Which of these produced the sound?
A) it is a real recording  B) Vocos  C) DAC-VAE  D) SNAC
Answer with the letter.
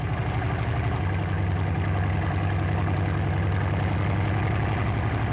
A